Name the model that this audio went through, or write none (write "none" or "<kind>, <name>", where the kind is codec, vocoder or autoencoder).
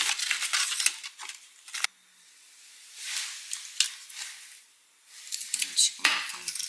none